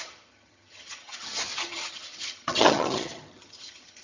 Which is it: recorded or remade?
remade